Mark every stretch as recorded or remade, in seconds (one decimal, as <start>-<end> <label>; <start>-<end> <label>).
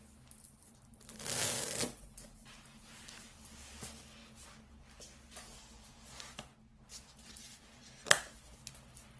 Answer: 0.0-9.2 recorded